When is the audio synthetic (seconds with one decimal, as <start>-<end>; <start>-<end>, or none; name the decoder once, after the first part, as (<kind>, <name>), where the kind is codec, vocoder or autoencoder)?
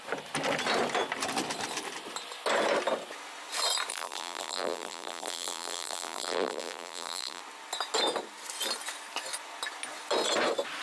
3.9-7.4 (vocoder, BigVGAN v2)